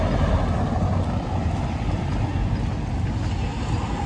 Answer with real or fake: real